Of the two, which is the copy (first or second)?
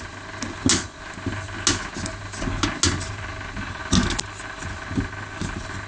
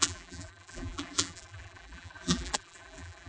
second